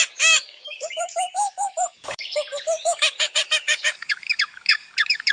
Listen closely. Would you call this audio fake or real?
fake